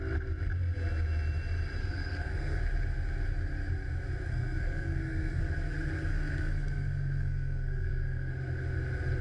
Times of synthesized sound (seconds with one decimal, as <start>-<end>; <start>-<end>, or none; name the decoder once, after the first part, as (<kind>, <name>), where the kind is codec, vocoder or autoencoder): 1.8-2.6 (codec, SNAC); 4.3-5.4; 6.1-8.3